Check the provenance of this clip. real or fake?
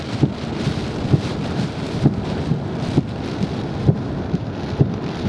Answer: fake